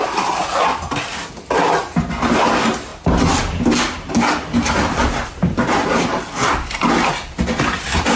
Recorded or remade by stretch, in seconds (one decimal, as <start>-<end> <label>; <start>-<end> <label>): 0.0-8.2 recorded